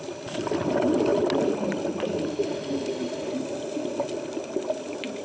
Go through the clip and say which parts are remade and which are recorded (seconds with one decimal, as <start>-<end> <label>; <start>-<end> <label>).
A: 0.0-5.2 recorded